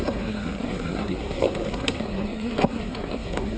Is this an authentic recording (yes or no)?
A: no